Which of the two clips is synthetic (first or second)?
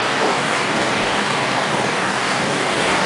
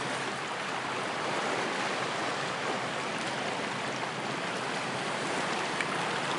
first